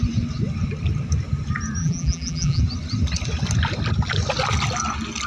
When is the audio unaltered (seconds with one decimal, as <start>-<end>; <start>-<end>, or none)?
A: 0.0-1.8; 2.6-5.3